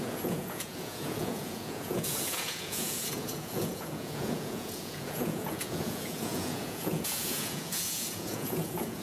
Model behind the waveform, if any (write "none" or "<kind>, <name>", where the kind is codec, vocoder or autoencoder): vocoder, Vocos